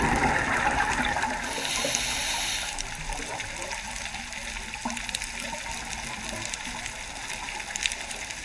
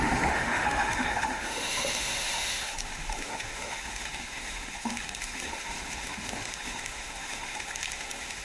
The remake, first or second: second